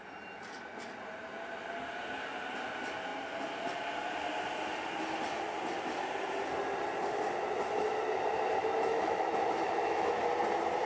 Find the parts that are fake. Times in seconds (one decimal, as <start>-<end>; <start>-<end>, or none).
8.6-10.1